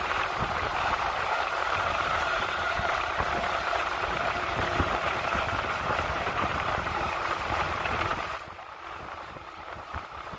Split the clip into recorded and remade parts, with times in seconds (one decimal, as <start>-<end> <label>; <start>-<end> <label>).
0.0-10.4 remade